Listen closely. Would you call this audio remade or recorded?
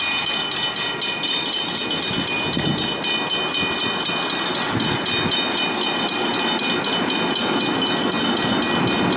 recorded